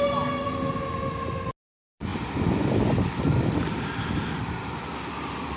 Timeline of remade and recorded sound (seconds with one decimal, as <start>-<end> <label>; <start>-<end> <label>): 0.0-5.6 recorded